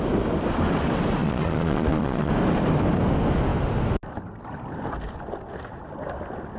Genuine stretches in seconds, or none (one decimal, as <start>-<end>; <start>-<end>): 0.0-1.2; 2.3-6.6